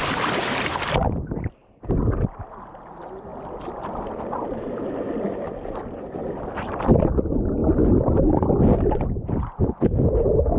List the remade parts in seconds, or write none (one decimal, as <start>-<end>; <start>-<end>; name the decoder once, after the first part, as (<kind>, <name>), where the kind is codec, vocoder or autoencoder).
none

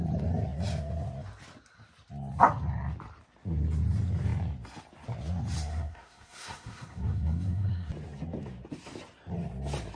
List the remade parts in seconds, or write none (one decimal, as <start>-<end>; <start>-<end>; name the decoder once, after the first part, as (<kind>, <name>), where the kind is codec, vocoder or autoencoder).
5.7-7.9 (codec, SNAC)